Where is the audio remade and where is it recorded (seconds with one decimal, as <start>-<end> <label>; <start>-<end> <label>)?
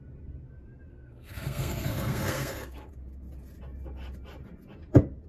0.0-0.9 recorded; 0.9-2.9 remade; 2.9-5.3 recorded